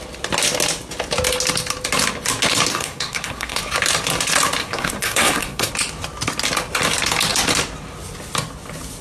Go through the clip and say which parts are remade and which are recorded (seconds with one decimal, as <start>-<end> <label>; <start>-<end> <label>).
0.0-2.7 recorded; 2.7-3.6 remade; 3.6-4.6 recorded; 4.6-5.7 remade; 5.7-9.0 recorded